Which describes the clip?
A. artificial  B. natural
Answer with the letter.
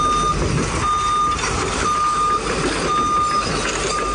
B